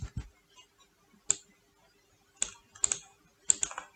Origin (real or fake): real